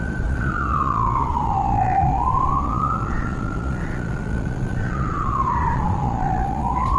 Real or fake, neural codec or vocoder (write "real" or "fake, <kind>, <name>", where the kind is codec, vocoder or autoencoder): fake, vocoder, Vocos